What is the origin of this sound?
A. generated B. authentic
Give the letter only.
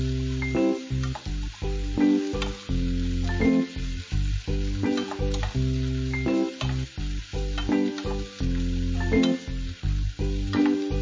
B